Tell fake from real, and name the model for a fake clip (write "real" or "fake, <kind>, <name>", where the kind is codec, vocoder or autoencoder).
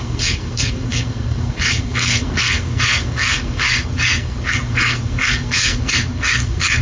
fake, codec, SNAC